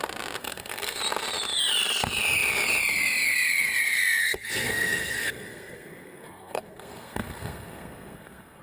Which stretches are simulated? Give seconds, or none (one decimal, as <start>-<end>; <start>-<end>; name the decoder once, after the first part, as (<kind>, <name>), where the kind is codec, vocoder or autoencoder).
0.4-1.0 (codec, SNAC); 4.2-8.6

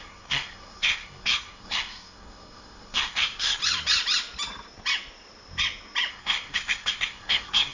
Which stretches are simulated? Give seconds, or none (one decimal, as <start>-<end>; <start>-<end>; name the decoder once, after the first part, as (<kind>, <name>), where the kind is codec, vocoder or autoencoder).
0.0-3.6 (codec, SNAC); 6.1-7.7

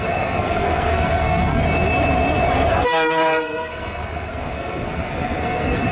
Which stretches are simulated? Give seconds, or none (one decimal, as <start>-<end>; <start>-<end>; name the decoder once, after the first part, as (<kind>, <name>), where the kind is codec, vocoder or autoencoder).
0.0-1.6 (codec, SNAC); 2.7-5.9

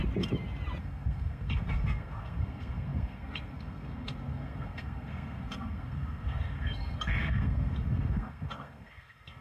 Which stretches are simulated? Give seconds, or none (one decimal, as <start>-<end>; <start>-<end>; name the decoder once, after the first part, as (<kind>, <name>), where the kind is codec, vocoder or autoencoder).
0.8-9.4 (codec, SNAC)

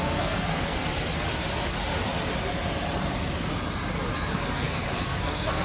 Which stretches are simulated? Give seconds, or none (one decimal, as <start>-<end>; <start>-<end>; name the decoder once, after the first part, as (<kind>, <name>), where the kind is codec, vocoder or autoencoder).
0.0-0.9 (codec, SNAC); 4.3-5.6